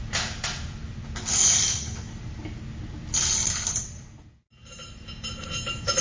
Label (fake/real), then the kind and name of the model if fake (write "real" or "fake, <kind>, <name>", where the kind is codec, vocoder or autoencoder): real